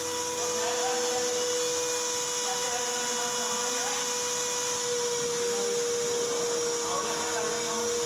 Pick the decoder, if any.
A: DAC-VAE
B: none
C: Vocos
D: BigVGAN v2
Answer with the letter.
B